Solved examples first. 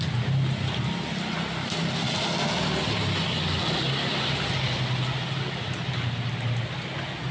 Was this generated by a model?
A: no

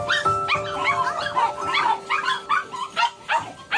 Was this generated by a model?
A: no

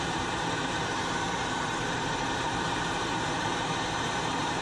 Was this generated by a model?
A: yes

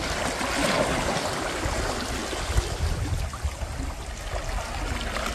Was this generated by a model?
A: no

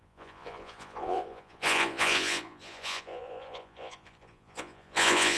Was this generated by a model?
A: yes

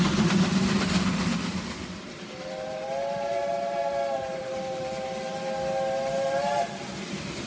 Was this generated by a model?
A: no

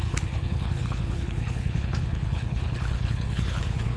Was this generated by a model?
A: yes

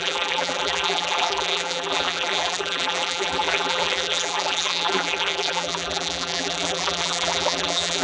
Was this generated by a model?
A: yes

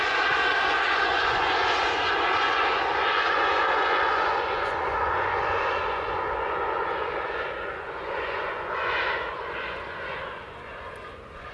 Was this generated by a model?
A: yes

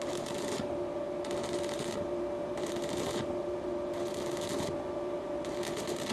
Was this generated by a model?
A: no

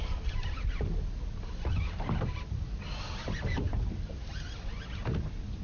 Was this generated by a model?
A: no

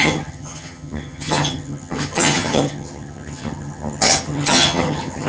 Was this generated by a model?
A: yes